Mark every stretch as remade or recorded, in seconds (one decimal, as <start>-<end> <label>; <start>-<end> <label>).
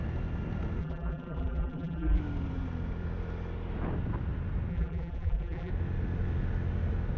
0.0-0.8 recorded; 0.8-2.2 remade; 2.2-4.7 recorded; 4.7-5.7 remade; 5.7-7.2 recorded